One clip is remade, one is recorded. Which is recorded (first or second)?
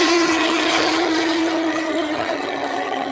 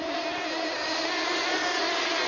second